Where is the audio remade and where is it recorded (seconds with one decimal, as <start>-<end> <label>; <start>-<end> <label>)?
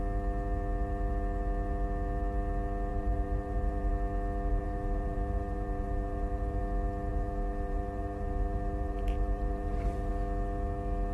0.0-2.9 recorded; 2.9-3.9 remade; 3.9-4.5 recorded; 4.5-6.6 remade; 6.6-7.1 recorded; 7.1-10.1 remade; 10.1-11.1 recorded